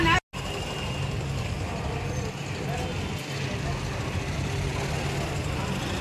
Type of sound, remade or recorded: recorded